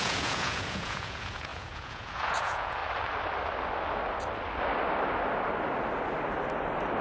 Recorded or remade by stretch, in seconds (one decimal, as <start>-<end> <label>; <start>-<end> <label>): 0.0-2.8 remade; 2.8-7.0 recorded